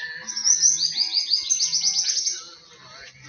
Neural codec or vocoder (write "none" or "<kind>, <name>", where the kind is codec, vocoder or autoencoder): none